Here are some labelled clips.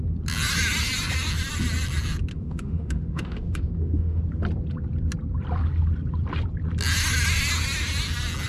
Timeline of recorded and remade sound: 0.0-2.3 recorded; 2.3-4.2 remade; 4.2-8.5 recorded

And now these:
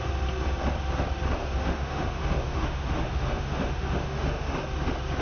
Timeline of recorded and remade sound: 0.0-1.4 recorded; 1.4-4.5 remade; 4.5-5.2 recorded

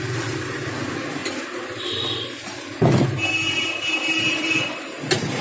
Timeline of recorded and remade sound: 0.0-5.4 recorded

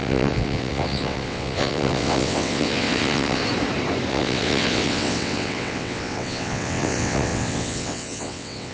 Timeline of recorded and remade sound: 0.0-3.4 remade; 3.4-4.1 recorded; 4.1-8.7 remade

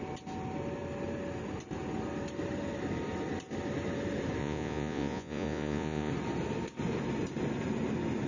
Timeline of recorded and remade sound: 0.0-4.4 recorded; 4.4-6.1 remade; 6.1-8.3 recorded

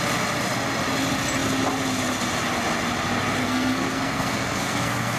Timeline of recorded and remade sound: 0.0-3.4 recorded; 3.4-5.2 remade

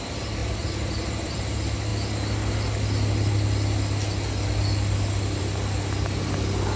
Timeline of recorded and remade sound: 0.0-0.4 recorded; 0.4-1.3 remade; 1.3-6.8 recorded

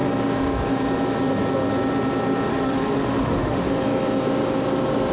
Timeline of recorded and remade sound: 0.0-2.5 recorded; 2.5-3.7 remade; 3.7-5.1 recorded